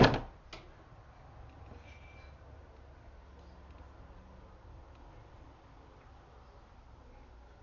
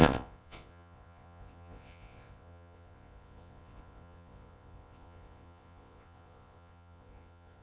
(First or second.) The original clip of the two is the first